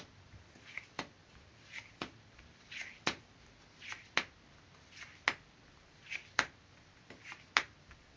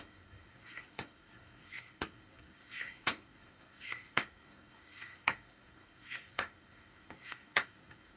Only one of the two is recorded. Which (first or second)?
first